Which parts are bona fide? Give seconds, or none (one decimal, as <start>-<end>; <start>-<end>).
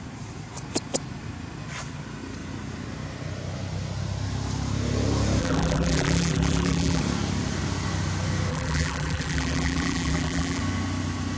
0.0-5.4; 7.0-8.5; 10.6-11.4